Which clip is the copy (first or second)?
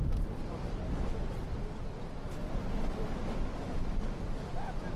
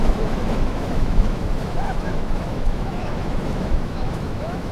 second